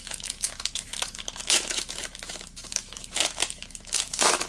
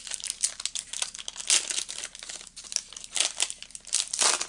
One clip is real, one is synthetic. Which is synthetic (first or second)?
first